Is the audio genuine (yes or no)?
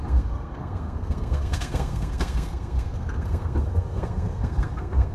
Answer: no